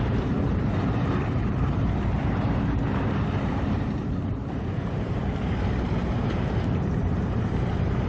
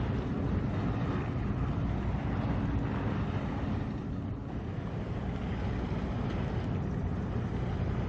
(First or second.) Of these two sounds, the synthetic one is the first